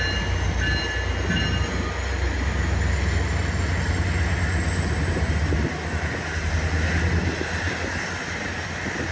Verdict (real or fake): real